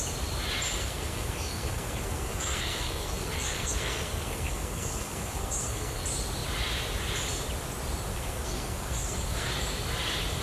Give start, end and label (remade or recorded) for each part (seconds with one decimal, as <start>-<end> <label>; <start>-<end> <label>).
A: 0.0-0.8 recorded; 0.8-6.0 remade; 6.0-8.1 recorded; 8.1-9.5 remade; 9.5-10.4 recorded